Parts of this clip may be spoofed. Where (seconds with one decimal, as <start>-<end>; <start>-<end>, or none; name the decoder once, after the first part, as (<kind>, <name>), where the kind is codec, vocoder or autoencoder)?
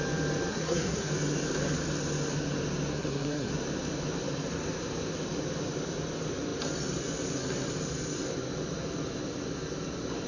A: 0.5-1.1 (codec, SNAC); 2.9-3.5